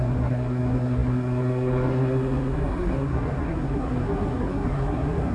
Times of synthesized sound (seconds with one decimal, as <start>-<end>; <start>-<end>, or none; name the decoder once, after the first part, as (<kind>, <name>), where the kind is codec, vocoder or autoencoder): 0.0-5.3 (codec, SNAC)

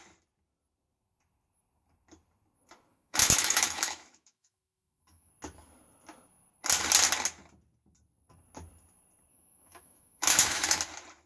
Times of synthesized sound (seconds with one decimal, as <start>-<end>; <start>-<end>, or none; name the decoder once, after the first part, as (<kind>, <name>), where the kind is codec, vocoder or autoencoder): 2.9-5.3 (autoencoder, DAC-VAE); 9.3-10.8

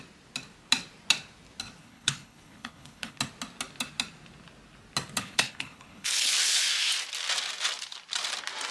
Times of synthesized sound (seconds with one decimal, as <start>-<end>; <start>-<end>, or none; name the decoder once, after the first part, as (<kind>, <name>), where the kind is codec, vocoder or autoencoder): 1.8-3.2 (codec, HILCodec); 5.2-6.3

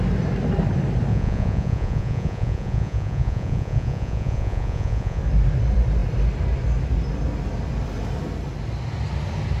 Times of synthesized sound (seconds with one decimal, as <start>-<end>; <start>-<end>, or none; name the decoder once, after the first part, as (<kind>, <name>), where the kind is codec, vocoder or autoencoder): 1.1-5.2 (vocoder, Vocos)